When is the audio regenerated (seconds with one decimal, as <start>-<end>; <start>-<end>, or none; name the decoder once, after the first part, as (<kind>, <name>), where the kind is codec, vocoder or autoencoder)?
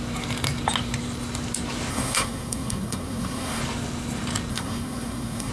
1.9-3.6 (codec, SNAC); 4.5-5.5